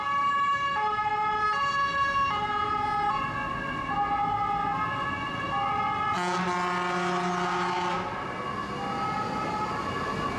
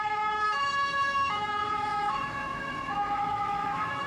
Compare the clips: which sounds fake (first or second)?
second